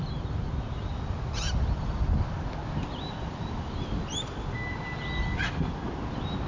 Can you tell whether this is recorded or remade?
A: recorded